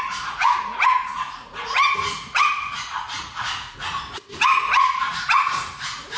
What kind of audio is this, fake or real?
fake